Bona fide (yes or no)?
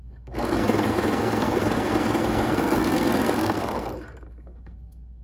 no